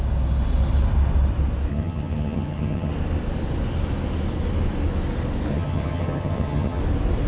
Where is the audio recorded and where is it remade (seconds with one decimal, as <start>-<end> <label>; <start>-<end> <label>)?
0.0-1.7 recorded; 1.7-2.9 remade; 2.9-5.5 recorded; 5.5-6.8 remade; 6.8-7.3 recorded